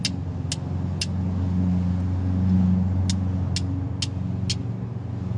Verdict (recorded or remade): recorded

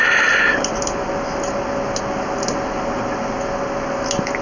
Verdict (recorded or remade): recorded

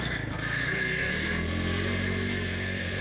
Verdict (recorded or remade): remade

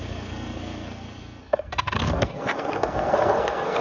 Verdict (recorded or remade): remade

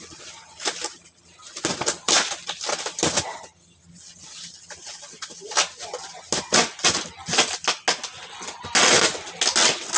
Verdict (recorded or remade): recorded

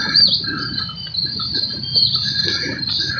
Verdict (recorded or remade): recorded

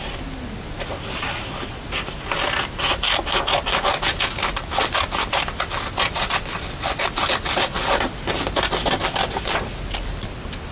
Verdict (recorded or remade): recorded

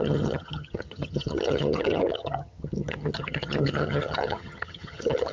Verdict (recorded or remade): remade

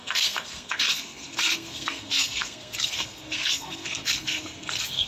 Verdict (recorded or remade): remade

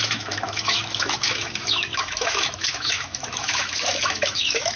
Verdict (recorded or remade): remade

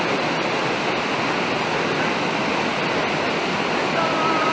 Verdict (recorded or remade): recorded